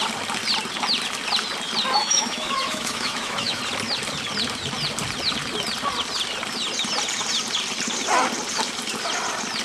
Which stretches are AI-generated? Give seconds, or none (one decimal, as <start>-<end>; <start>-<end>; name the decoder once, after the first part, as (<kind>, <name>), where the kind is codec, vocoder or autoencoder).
2.0-3.6 (autoencoder, DAC-VAE)